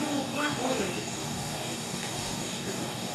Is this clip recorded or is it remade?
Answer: remade